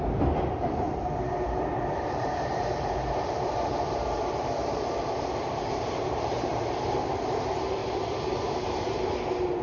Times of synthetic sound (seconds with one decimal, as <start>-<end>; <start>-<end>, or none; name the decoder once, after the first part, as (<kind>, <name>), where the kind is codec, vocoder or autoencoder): 1.7-6.5 (vocoder, BigVGAN v2); 7.8-9.6